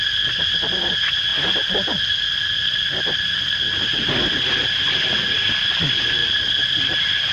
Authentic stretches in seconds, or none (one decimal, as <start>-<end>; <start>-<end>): 0.0-7.3